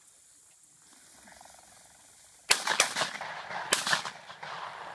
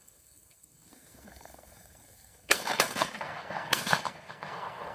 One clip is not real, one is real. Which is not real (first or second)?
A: second